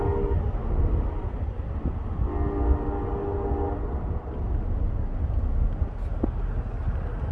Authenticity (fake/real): real